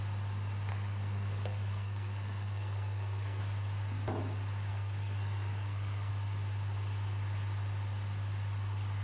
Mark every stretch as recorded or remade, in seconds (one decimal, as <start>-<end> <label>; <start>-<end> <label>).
0.0-0.7 recorded; 0.7-3.4 remade; 3.4-4.7 recorded; 4.7-6.1 remade; 6.1-9.0 recorded